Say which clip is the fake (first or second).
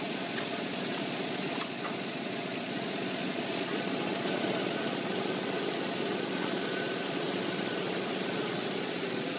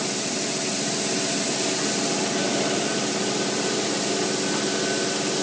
first